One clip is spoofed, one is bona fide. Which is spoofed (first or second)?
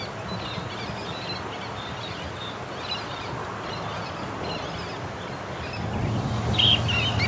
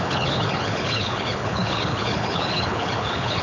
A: second